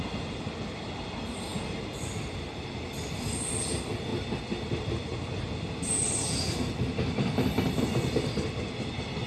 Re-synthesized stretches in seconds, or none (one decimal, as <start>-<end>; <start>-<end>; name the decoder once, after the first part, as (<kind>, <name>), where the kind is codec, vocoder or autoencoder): none